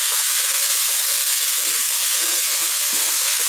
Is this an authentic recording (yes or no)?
no